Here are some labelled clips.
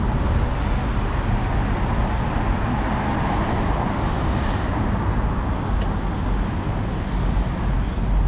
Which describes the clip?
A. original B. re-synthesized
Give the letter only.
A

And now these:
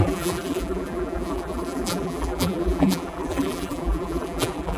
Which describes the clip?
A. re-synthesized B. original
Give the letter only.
A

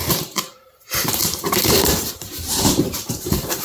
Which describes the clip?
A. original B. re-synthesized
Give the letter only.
B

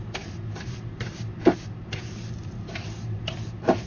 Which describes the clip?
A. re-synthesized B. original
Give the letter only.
A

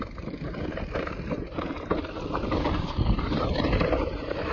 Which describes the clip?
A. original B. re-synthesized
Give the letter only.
B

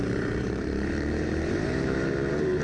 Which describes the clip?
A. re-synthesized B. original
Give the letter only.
A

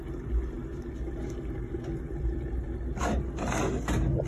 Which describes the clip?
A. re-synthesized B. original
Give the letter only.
B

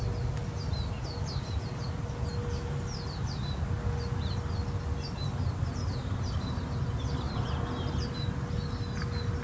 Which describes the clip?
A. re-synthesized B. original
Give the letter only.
B